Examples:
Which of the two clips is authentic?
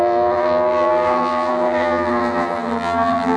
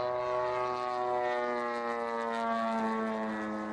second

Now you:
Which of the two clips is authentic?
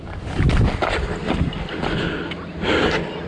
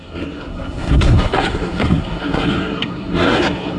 first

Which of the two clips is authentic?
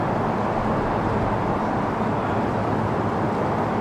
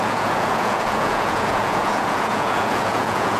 first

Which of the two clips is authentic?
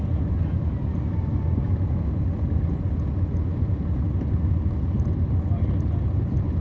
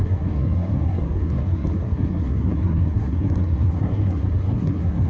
first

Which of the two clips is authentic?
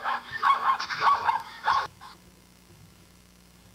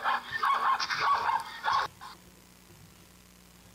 second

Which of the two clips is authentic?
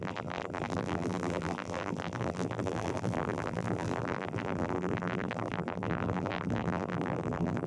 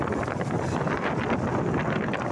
second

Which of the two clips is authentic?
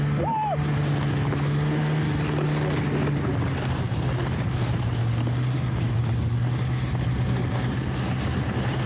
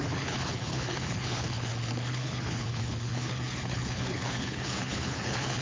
first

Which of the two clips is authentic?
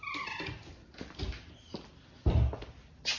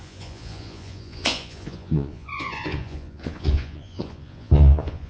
first